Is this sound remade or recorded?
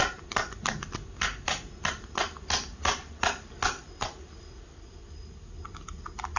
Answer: recorded